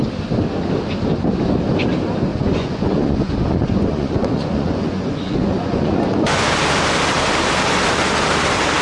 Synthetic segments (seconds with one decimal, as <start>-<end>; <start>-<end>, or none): 2.3-6.5